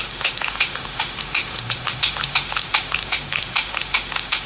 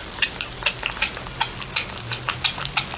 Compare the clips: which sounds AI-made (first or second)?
first